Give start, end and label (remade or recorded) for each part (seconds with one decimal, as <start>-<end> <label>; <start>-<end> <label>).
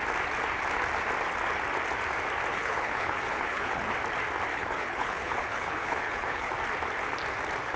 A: 0.0-2.5 recorded; 2.5-3.8 remade; 3.8-4.5 recorded; 4.5-6.5 remade; 6.5-7.8 recorded